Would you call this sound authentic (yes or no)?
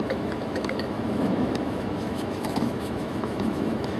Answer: no